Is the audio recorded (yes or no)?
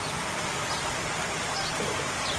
yes